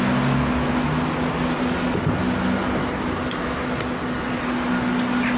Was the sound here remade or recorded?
recorded